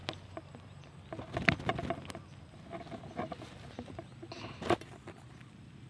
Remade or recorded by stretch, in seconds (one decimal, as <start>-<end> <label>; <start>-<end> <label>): 0.0-5.9 recorded

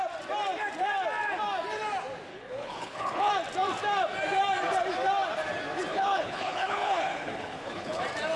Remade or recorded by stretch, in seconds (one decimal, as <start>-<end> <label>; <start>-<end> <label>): 0.0-2.3 recorded; 2.3-3.3 remade; 3.3-5.9 recorded; 5.9-8.0 remade; 8.0-8.4 recorded